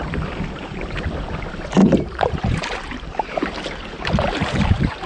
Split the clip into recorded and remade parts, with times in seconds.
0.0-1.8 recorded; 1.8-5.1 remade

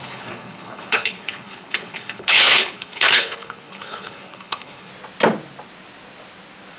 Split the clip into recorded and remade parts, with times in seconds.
0.0-4.9 remade; 4.9-6.8 recorded

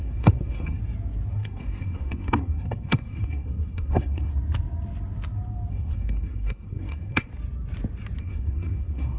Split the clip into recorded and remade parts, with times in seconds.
0.0-0.8 remade; 0.8-1.3 recorded; 1.3-4.3 remade; 4.3-5.7 recorded; 5.7-7.3 remade; 7.3-8.2 recorded; 8.2-9.2 remade

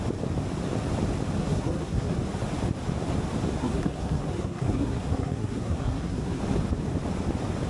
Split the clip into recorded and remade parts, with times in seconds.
0.0-1.4 recorded; 1.4-2.1 remade; 2.1-3.6 recorded; 3.6-6.4 remade; 6.4-7.7 recorded

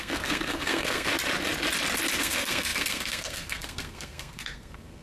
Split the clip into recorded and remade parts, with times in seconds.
0.0-1.1 remade; 1.1-2.2 recorded; 2.2-5.0 remade

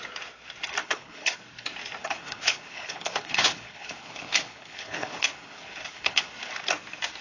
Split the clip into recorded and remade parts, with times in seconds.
0.0-0.8 recorded; 0.8-1.4 remade; 1.4-2.0 recorded; 2.0-6.3 remade; 6.3-7.2 recorded

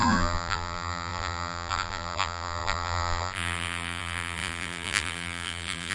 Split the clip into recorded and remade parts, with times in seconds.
0.0-5.9 remade

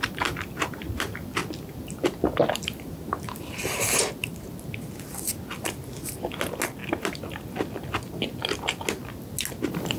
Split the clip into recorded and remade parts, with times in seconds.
0.0-10.0 recorded